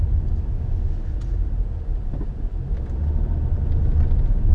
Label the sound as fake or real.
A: real